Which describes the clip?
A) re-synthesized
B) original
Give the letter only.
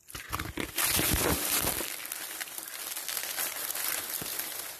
B